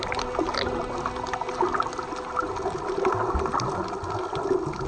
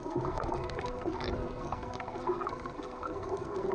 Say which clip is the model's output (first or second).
second